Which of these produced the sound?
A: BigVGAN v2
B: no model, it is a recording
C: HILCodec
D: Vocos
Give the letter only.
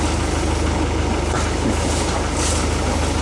B